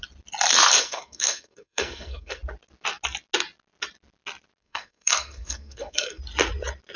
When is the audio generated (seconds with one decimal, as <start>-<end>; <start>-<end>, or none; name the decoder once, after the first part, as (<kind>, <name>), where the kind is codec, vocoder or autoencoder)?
0.8-2.4 (codec, SNAC); 4.6-6.2

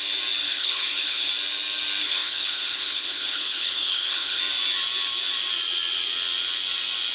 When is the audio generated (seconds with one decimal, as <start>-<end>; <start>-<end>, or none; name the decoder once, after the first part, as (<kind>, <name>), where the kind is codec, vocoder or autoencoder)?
0.4-1.3 (codec, HILCodec); 2.0-4.4

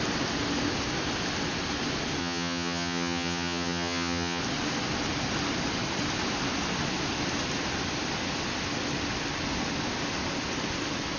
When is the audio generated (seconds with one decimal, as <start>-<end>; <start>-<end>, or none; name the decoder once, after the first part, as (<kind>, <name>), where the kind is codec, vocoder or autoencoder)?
2.2-4.4 (vocoder, HiFi-GAN)

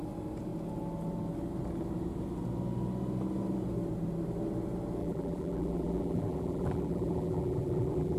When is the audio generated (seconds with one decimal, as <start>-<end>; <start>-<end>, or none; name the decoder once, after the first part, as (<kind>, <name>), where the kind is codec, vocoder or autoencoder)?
5.0-8.2 (vocoder, BigVGAN v2)

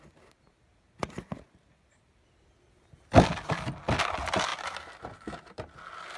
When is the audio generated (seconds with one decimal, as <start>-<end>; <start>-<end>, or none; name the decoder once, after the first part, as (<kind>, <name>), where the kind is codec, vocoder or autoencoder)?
none

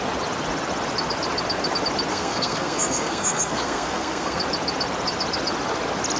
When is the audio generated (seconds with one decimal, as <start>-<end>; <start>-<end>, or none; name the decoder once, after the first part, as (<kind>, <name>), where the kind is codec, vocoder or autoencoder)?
2.1-4.4 (codec, SNAC)

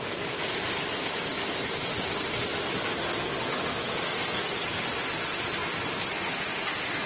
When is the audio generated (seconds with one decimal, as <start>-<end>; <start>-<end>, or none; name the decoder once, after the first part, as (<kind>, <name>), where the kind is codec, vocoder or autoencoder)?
none

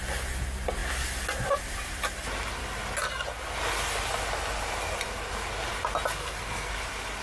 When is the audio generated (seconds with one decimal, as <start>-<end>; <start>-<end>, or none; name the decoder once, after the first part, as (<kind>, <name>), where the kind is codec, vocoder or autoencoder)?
6.2-6.7 (codec, SNAC)